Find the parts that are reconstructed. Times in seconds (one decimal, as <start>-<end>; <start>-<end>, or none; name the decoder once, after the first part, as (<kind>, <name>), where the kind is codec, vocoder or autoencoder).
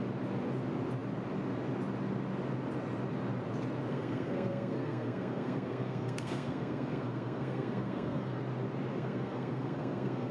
3.9-8.4 (codec, SNAC); 8.9-10.3